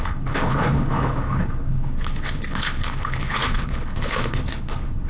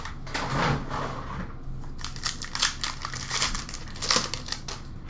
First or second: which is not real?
first